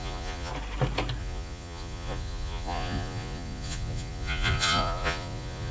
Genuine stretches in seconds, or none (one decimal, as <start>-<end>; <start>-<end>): 0.5-1.2